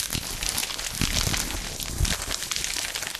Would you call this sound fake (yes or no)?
no